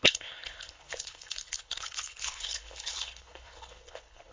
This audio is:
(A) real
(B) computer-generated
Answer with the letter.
B